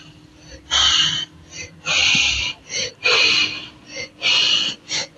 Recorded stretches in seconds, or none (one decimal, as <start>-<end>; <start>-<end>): 0.0-3.8